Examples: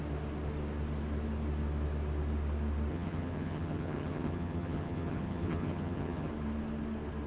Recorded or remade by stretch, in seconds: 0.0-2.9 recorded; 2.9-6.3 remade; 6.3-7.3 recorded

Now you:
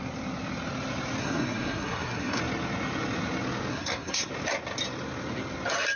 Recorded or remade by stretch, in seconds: 0.0-1.2 recorded; 1.2-2.4 remade; 2.4-3.7 recorded; 3.7-4.3 remade; 4.3-6.0 recorded

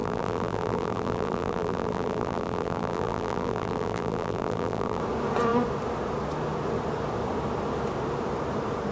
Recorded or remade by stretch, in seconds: 0.0-5.0 remade; 5.0-8.9 recorded

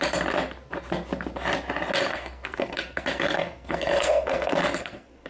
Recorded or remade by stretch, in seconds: 0.0-2.1 recorded; 2.1-5.3 remade

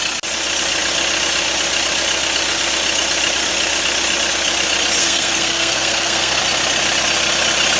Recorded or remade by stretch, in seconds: 0.0-5.0 recorded; 5.0-6.4 remade; 6.4-7.8 recorded

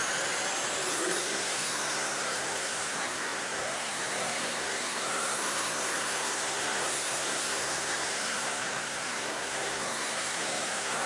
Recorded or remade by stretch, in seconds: 0.0-0.9 recorded; 0.9-11.1 remade

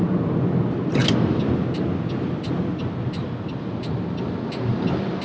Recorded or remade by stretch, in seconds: 0.0-5.2 recorded

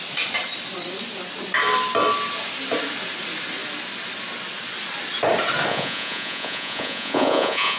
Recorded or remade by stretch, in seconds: 0.0-5.7 recorded; 5.7-7.8 remade